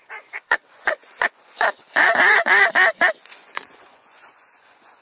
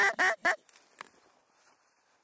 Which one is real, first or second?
second